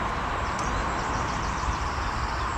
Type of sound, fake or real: real